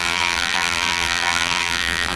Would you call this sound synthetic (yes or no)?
yes